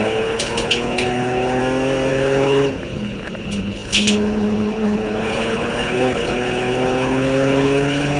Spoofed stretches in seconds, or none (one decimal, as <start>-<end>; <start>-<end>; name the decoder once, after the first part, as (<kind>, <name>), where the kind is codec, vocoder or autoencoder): 0.0-1.6 (codec, HILCodec); 2.1-8.2

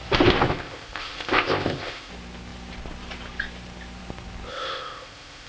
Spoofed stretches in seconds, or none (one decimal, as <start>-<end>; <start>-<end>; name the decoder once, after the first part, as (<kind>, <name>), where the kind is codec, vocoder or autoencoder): 0.5-2.1 (codec, ZipCodec); 4.5-5.5

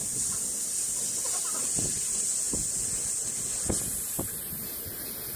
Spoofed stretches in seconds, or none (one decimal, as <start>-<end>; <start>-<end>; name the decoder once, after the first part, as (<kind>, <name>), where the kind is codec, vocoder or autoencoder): none

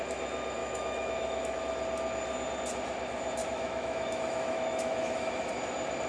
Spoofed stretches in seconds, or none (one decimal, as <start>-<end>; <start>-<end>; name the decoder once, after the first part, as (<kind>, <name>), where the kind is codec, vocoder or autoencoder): 0.6-1.6 (autoencoder, DAC-VAE); 3.4-5.5

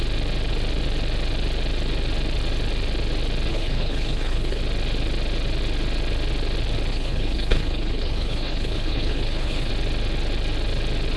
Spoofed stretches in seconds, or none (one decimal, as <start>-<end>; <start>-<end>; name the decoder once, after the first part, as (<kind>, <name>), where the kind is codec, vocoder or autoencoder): 3.5-4.6 (codec, HILCodec); 6.9-9.7

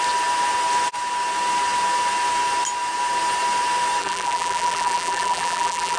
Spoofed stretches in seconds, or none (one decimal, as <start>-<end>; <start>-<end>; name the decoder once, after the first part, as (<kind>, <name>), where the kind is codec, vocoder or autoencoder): 4.0-6.0 (vocoder, BigVGAN v2)